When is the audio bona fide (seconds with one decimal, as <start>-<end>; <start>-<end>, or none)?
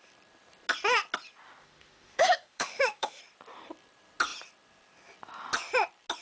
0.0-1.6; 3.2-6.2